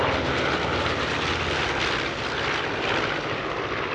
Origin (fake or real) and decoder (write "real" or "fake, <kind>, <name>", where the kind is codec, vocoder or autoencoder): real